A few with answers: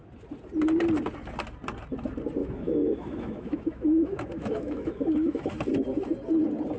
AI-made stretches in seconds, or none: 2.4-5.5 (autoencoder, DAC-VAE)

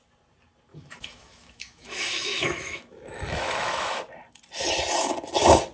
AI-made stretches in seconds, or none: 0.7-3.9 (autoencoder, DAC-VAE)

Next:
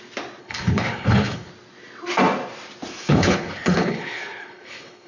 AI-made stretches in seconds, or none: 0.4-1.5 (codec, HILCodec); 3.0-5.1

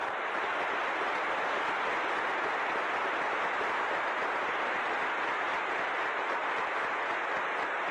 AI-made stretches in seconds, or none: none

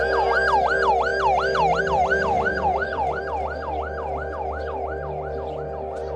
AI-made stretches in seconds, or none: 2.5-3.2 (vocoder, Vocos)

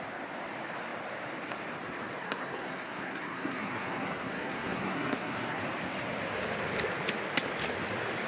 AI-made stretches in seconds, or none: 2.2-5.6 (codec, SNAC)